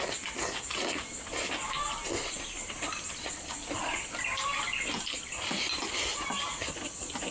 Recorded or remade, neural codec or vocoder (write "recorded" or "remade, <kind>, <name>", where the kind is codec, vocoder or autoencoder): recorded